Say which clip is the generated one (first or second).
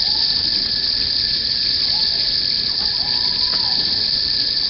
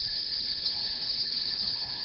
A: second